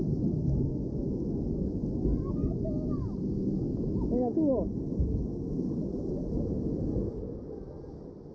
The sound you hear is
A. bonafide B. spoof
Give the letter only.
A